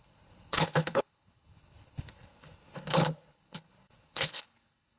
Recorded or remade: remade